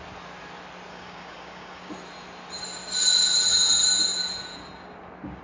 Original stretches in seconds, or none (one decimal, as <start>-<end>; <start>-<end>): 0.0-0.9; 1.9-5.4